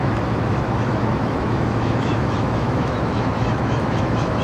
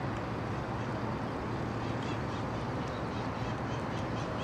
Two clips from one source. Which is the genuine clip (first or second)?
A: second